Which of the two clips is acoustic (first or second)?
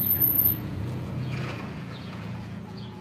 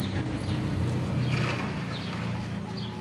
second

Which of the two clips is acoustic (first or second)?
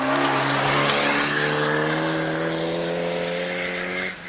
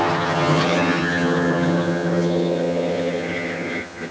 first